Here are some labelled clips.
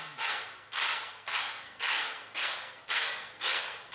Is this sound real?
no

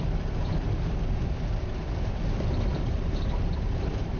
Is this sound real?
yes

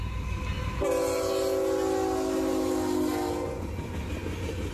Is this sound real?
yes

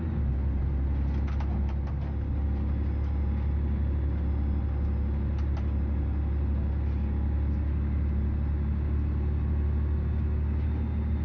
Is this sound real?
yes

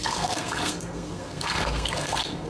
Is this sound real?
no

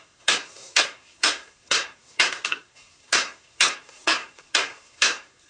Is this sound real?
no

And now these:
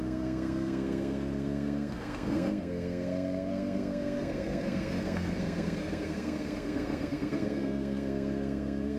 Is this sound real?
no